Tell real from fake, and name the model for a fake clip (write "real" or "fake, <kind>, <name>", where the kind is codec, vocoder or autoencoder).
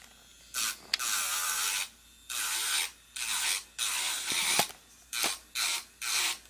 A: real